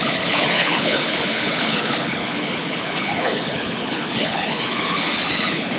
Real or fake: fake